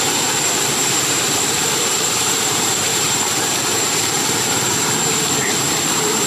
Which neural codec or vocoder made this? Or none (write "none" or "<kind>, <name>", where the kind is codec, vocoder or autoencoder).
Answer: vocoder, BigVGAN v2